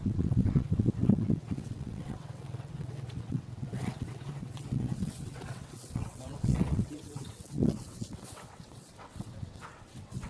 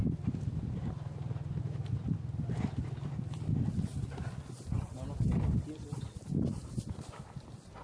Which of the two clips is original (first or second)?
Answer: second